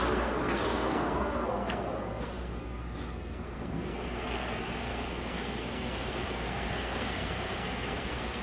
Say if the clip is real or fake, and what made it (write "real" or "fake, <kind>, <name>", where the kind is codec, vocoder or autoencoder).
fake, codec, SNAC